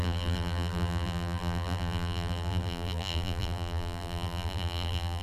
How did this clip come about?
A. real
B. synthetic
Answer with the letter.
B